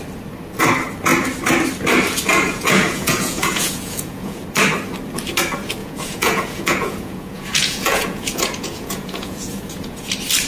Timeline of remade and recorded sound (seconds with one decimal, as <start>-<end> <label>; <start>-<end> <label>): 0.0-2.3 recorded; 2.3-4.4 remade; 4.4-5.8 recorded; 5.8-10.1 remade; 10.1-10.5 recorded